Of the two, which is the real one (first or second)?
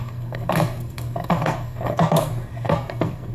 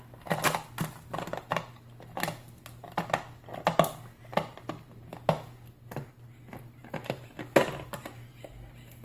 second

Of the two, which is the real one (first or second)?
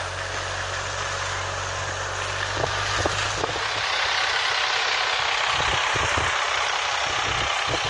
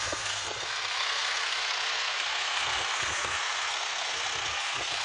first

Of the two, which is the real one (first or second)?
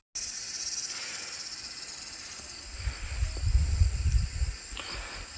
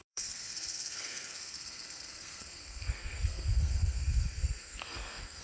first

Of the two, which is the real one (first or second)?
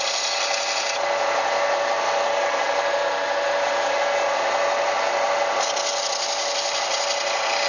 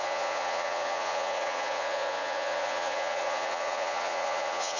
first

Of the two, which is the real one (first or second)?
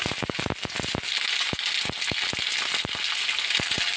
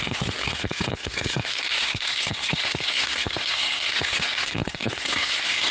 first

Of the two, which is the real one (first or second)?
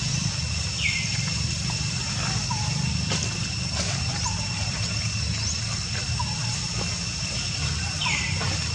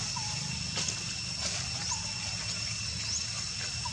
second